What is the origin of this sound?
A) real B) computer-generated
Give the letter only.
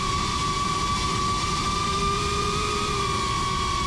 B